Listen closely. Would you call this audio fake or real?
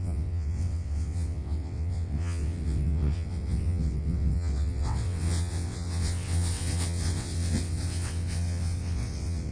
fake